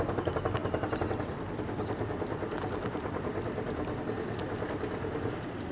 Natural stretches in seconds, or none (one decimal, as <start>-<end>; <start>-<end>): 0.0-5.7